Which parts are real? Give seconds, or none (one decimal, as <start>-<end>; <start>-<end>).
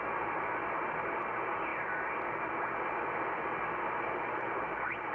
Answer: 0.0-5.1